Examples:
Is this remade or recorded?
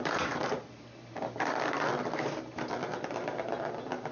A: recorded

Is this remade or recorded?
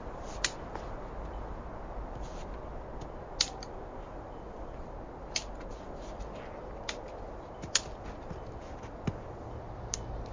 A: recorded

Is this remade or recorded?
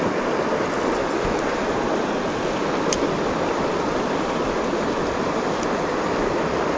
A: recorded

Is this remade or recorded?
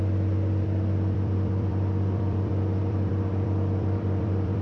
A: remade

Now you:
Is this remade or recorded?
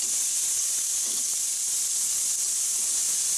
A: recorded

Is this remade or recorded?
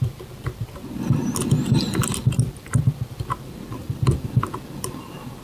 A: recorded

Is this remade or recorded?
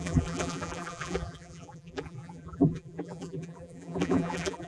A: remade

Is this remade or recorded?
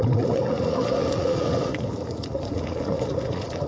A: remade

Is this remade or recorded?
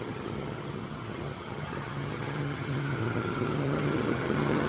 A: remade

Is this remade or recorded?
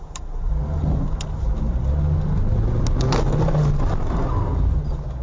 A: recorded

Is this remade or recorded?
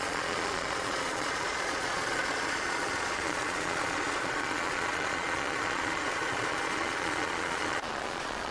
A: remade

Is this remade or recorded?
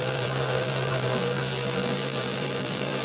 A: remade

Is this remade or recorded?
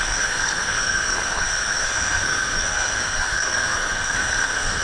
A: remade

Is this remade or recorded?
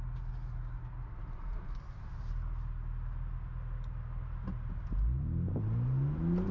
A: recorded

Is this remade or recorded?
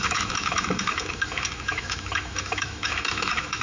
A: remade